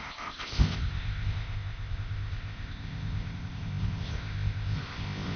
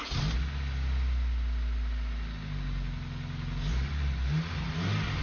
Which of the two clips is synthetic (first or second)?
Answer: first